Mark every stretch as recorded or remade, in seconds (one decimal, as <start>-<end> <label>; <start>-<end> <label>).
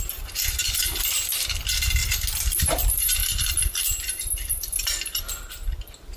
0.0-3.2 recorded; 3.2-5.2 remade; 5.2-6.2 recorded